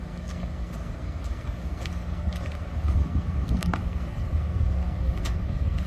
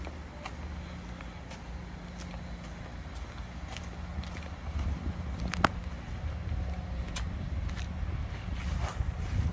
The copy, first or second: first